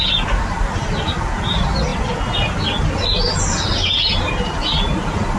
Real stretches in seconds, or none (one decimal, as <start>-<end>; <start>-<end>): 0.0-5.4